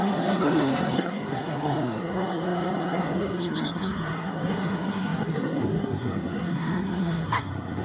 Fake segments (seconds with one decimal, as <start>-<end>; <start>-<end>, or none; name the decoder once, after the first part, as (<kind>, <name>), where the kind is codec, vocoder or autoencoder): 0.0-7.8 (codec, SNAC)